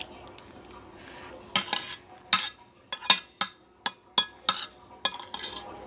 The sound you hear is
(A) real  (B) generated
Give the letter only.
A